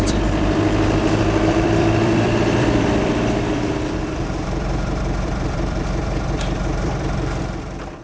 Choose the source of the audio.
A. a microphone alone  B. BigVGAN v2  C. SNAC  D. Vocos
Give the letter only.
B